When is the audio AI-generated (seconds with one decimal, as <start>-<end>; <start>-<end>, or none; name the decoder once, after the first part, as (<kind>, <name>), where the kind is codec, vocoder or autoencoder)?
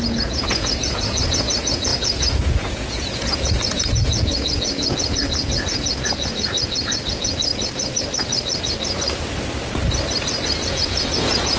0.0-7.5 (vocoder, Vocos); 10.7-11.6